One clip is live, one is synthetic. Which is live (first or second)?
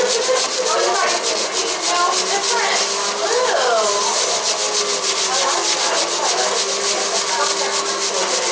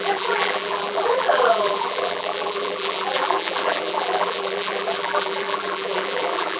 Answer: first